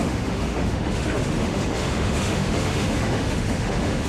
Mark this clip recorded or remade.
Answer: remade